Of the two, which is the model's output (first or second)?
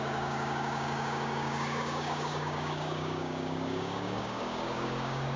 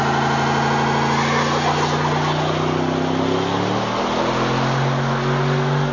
first